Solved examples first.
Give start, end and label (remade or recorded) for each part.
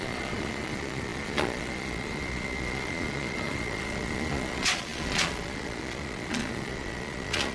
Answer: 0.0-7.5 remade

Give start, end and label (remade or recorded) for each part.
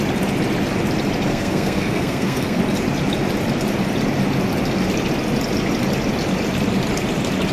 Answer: 0.0-1.3 recorded; 1.3-2.6 remade; 2.6-7.5 recorded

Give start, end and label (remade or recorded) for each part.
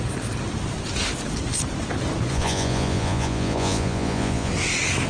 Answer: 0.0-2.3 recorded; 2.3-4.5 remade; 4.5-5.1 recorded